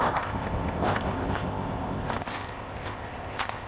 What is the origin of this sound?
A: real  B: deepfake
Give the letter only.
B